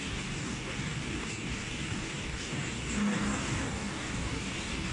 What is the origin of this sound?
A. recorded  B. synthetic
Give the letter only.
B